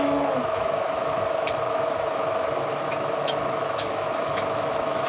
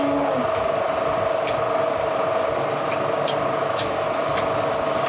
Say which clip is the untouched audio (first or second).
second